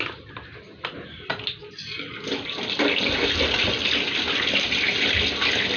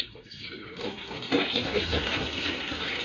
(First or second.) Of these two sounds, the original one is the first